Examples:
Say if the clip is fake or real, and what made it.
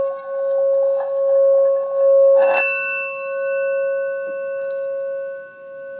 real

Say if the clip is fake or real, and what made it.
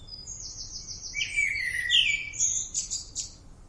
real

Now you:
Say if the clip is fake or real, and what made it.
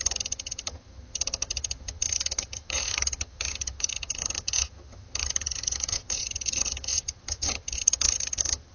fake, vocoder, HiFi-GAN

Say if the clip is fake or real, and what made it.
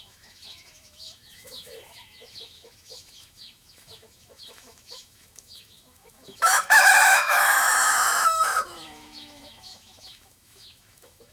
fake, autoencoder, DAC-VAE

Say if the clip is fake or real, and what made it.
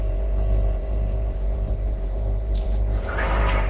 fake, vocoder, BigVGAN v2